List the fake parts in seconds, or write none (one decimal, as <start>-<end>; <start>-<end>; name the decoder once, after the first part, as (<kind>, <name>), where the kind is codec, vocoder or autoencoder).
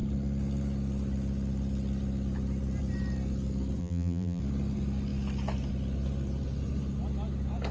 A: 3.8-4.4 (vocoder, BigVGAN v2)